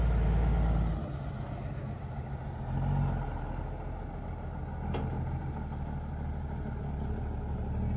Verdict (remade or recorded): recorded